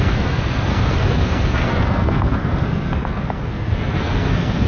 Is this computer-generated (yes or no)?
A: yes